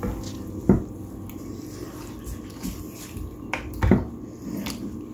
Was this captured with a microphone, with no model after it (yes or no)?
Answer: yes